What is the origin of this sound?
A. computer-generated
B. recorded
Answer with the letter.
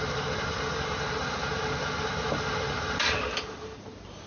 B